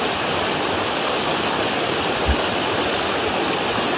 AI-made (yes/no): no